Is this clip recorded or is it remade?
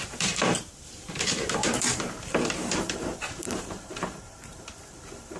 remade